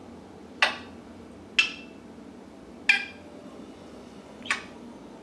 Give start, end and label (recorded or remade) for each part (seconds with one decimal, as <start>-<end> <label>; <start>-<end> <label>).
0.0-3.4 recorded; 3.4-4.8 remade; 4.8-5.2 recorded